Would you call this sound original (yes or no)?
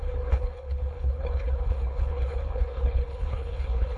no